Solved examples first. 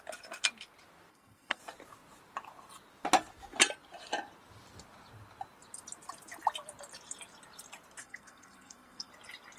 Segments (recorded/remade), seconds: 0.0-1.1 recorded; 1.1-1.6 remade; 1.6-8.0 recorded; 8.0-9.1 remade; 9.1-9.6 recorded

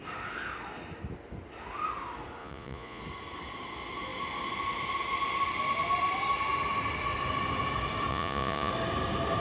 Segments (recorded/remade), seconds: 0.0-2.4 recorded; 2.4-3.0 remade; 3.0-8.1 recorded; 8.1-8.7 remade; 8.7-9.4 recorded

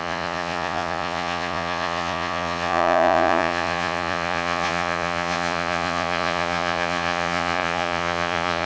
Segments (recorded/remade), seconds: 0.0-8.7 remade

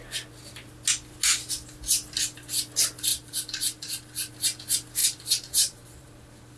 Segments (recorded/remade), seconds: 0.0-3.1 recorded; 3.1-4.3 remade; 4.3-5.0 recorded; 5.0-6.6 remade

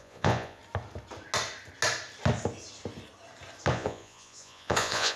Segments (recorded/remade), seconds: 0.0-0.6 remade; 0.6-3.7 recorded; 3.7-5.2 remade